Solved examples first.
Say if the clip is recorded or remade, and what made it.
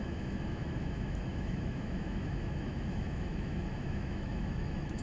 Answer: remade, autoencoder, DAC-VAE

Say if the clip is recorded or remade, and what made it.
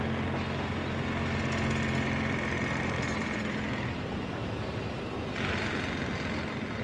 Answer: recorded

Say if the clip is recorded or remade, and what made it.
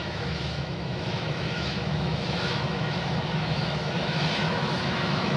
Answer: remade, autoencoder, DAC-VAE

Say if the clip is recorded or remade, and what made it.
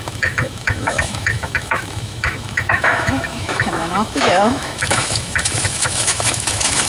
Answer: remade, autoencoder, DAC-VAE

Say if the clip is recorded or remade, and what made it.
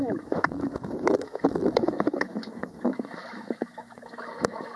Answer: remade, autoencoder, DAC-VAE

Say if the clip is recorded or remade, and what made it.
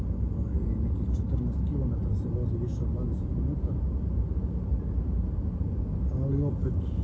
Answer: recorded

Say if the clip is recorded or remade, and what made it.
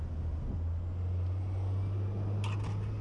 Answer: recorded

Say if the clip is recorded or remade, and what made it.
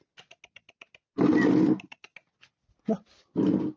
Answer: recorded